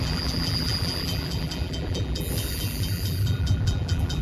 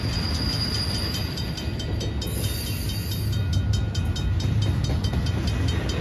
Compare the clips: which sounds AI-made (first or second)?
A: first